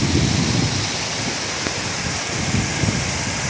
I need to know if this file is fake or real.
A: real